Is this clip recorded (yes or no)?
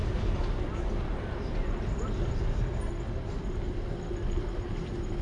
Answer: yes